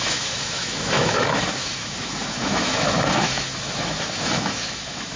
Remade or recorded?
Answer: remade